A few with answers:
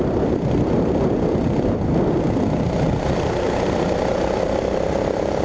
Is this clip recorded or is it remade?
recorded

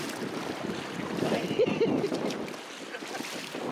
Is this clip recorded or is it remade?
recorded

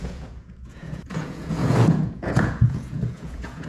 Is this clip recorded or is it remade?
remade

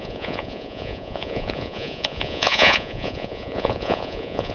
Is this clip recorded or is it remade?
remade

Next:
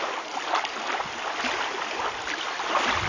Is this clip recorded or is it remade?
recorded